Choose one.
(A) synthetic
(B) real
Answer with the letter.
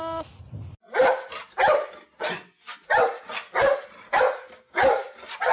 B